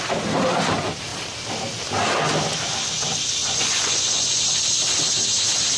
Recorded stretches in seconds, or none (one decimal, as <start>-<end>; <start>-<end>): 0.0-3.4; 4.4-5.8